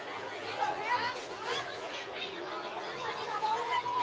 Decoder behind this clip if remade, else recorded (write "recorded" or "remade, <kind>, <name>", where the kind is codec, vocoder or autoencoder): remade, vocoder, Vocos